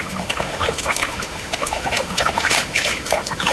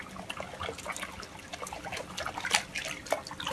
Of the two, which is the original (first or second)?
second